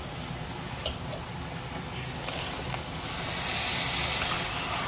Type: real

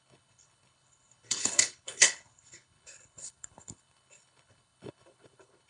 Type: fake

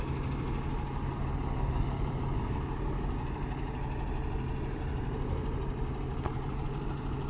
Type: real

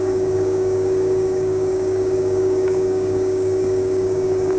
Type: fake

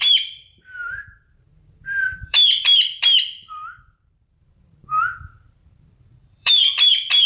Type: fake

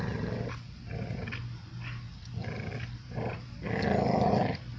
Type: real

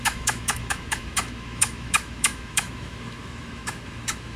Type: fake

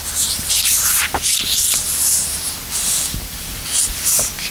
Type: real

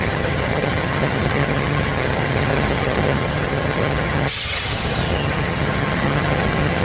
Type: fake